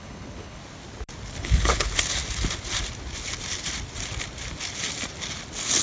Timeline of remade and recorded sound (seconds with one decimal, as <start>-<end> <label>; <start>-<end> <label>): 0.0-0.6 remade; 0.6-1.3 recorded; 1.3-2.2 remade; 2.2-5.8 recorded